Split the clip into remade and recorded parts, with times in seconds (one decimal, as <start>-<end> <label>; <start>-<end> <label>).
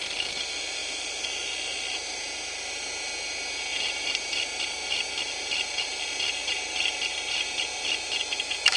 0.0-3.7 recorded; 3.7-4.2 remade; 4.2-6.4 recorded; 6.4-7.0 remade; 7.0-8.8 recorded